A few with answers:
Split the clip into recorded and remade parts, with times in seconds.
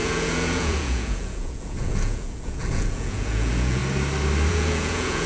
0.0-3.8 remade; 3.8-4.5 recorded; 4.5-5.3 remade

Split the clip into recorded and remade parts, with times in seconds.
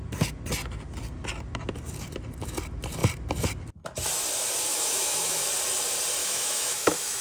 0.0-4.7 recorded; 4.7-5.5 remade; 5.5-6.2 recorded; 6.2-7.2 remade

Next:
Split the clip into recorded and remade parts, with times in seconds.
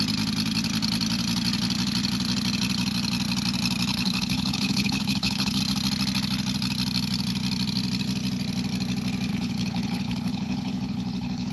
0.0-3.9 recorded; 3.9-5.6 remade; 5.6-9.3 recorded; 9.3-11.5 remade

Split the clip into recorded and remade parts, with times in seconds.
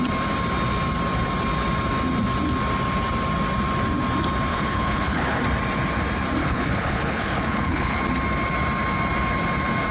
0.0-4.5 recorded; 4.5-5.4 remade; 5.4-6.4 recorded; 6.4-8.0 remade; 8.0-9.9 recorded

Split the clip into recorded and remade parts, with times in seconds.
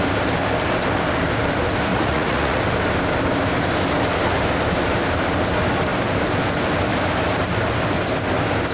0.0-1.9 recorded; 1.9-2.6 remade; 2.6-8.7 recorded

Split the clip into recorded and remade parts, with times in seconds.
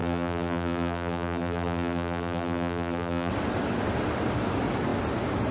0.0-3.3 remade; 3.3-5.5 recorded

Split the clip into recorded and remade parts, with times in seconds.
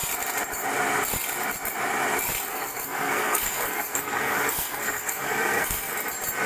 0.0-2.5 recorded; 2.5-5.9 remade; 5.9-6.5 recorded